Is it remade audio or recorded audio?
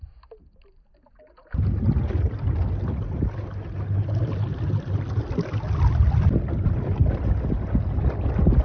recorded